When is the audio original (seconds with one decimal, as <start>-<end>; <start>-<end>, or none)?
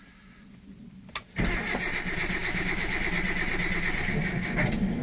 0.0-2.4; 3.0-5.0